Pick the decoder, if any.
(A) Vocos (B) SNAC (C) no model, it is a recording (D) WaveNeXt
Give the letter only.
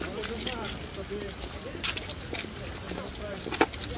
C